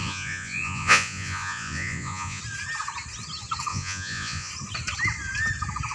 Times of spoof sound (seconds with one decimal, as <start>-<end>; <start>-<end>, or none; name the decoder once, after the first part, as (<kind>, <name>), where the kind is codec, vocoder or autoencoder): 0.0-2.4 (vocoder, Vocos); 3.7-4.5